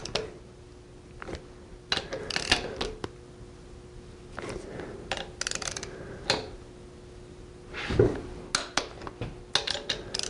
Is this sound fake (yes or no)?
no